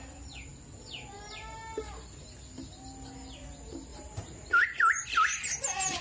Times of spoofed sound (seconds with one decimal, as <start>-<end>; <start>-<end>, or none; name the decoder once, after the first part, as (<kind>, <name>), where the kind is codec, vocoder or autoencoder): 3.9-4.5 (vocoder, BigVGAN v2)